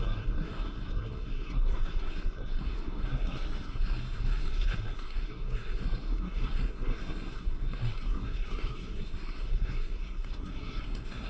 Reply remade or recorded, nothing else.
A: remade